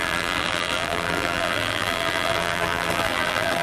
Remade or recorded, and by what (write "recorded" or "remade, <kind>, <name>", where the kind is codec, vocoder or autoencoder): remade, vocoder, BigVGAN v2